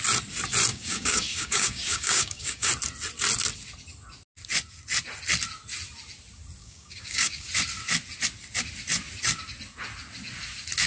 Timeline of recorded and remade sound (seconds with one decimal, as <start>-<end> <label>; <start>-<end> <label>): 0.0-0.7 recorded; 0.7-2.7 remade; 2.7-6.6 recorded; 6.6-7.5 remade; 7.5-10.9 recorded